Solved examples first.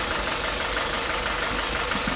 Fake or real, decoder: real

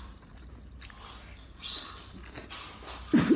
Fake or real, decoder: real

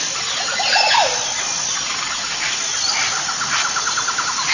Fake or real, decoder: real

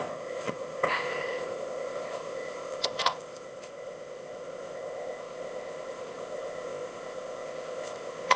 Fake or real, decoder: fake, codec, ZipCodec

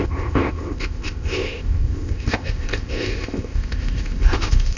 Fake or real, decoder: fake, codec, ZipCodec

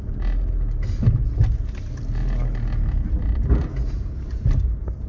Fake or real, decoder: real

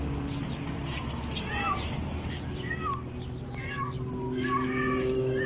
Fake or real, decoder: real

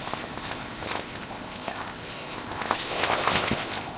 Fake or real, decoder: fake, codec, ZipCodec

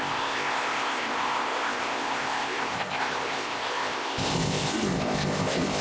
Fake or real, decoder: fake, codec, ZipCodec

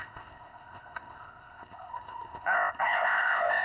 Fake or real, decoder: fake, codec, ZipCodec